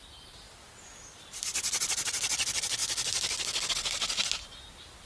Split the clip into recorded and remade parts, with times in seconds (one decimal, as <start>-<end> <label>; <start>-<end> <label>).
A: 0.0-5.1 recorded